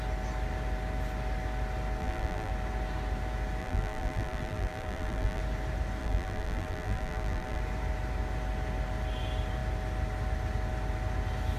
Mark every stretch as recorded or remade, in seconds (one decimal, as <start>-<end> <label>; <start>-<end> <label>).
0.0-2.0 recorded; 2.0-2.5 remade; 2.5-3.6 recorded; 3.6-5.4 remade; 5.4-6.0 recorded; 6.0-7.6 remade; 7.6-11.6 recorded